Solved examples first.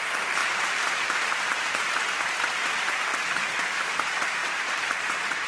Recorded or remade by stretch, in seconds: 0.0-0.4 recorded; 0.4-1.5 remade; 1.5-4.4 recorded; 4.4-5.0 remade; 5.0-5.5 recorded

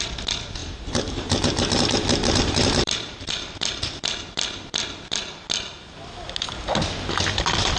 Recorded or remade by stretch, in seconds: 0.0-0.6 recorded; 0.6-3.3 remade; 3.3-7.8 recorded

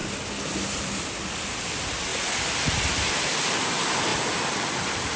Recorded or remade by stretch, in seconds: 0.0-4.1 recorded; 4.1-5.2 remade

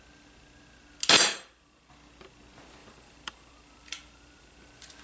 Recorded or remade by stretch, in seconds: 0.0-1.3 recorded; 1.3-1.9 remade; 1.9-2.8 recorded; 2.8-5.0 remade

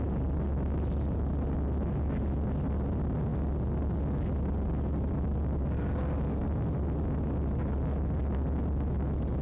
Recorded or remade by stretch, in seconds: 0.0-9.4 recorded

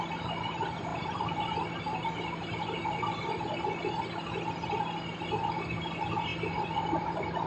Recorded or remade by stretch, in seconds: 0.0-0.9 recorded; 0.9-1.5 remade; 1.5-6.3 recorded; 6.3-7.5 remade